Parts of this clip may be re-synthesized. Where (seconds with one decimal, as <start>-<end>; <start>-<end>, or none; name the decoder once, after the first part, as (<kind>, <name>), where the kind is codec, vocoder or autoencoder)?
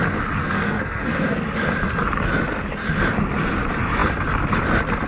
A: 0.4-1.4 (codec, SNAC)